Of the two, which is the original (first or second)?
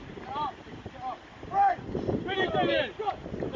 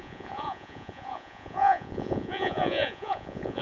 first